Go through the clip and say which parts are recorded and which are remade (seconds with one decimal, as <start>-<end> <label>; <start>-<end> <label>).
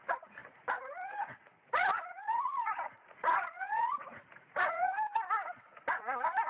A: 0.0-4.9 remade; 4.9-5.9 recorded; 5.9-6.5 remade